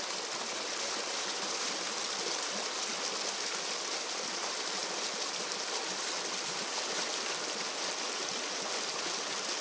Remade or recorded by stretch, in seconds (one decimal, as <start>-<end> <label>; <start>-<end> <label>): 0.0-9.6 recorded